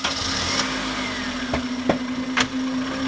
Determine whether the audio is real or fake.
real